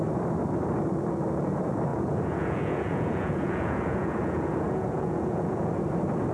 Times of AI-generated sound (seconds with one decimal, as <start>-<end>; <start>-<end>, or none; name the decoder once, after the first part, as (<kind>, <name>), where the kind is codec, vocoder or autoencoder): 1.9-5.7 (vocoder, Vocos)